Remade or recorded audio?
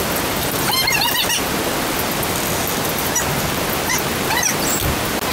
recorded